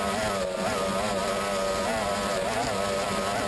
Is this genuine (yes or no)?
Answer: yes